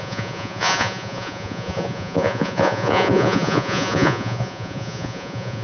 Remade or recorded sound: remade